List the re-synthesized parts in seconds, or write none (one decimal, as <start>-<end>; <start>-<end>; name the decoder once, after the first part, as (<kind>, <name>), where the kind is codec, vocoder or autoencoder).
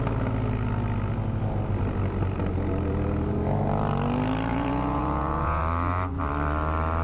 4.5-5.6 (vocoder, Vocos)